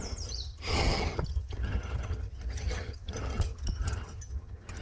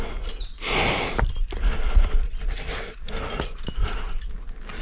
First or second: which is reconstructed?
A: first